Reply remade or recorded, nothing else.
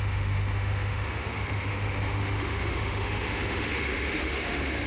remade